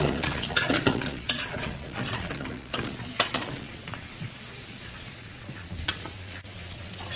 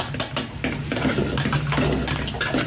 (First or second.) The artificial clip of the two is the first